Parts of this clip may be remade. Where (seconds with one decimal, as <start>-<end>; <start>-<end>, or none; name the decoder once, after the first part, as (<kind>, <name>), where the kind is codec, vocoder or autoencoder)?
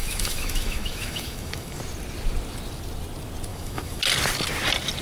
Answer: 0.0-1.8 (autoencoder, DAC-VAE); 3.5-4.0